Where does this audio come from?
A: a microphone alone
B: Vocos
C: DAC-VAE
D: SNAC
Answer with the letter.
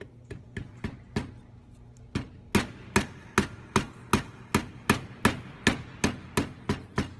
A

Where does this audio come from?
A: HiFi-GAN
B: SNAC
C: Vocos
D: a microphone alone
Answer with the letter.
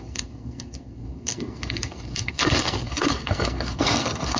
B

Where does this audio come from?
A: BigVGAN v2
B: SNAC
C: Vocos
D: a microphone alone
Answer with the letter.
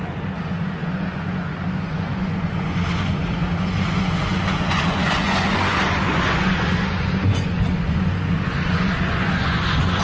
C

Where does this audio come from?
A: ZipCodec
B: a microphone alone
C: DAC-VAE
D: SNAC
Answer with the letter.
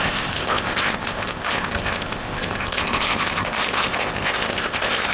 A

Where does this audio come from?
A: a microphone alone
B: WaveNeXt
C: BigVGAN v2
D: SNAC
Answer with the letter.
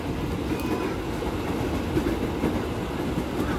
A